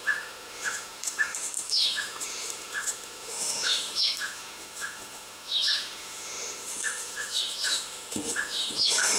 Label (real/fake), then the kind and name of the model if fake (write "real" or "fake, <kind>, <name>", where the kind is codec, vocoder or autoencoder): fake, autoencoder, DAC-VAE